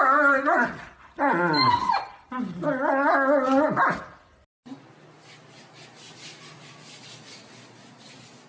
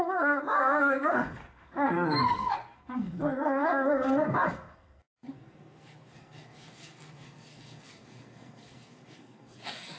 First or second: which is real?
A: first